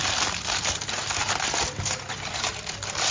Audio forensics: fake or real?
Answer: real